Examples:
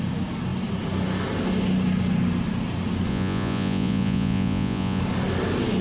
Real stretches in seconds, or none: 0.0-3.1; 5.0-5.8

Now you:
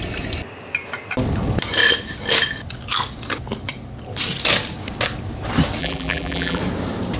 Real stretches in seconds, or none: 0.0-5.8; 6.6-7.2

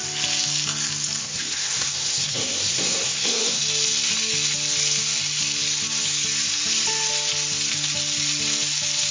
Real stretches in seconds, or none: 0.0-1.2; 3.6-9.1